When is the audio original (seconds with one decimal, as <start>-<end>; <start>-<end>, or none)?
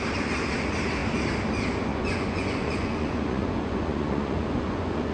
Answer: 0.0-1.9